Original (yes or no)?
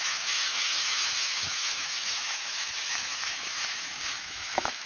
no